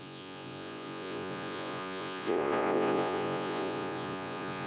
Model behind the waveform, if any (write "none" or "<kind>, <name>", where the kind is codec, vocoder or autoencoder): vocoder, Vocos